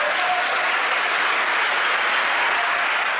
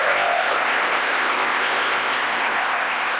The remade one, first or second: second